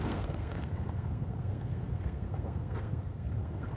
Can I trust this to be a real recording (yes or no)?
no